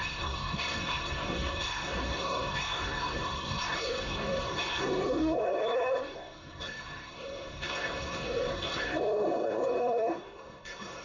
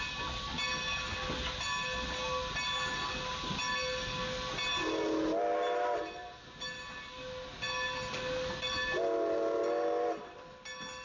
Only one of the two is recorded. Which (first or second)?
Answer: second